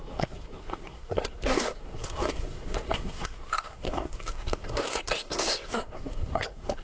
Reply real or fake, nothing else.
fake